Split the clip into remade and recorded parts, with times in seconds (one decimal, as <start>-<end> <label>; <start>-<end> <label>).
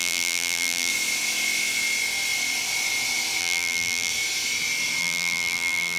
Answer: 0.0-0.9 remade; 0.9-3.4 recorded; 3.4-4.1 remade; 4.1-5.0 recorded; 5.0-6.0 remade